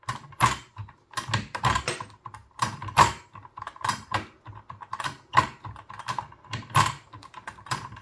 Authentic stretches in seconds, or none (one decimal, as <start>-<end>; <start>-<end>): 0.8-1.6